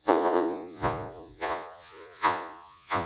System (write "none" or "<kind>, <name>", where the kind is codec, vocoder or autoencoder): vocoder, Vocos